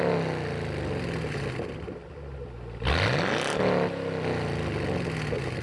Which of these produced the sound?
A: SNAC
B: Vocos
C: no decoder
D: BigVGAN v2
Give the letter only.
C